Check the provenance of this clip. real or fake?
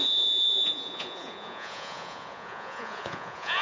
fake